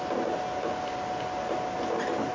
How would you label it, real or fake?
real